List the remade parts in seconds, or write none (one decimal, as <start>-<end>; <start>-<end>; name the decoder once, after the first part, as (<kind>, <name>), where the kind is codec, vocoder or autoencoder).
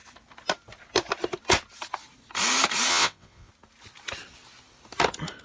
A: 2.9-3.5 (vocoder, WaveNeXt)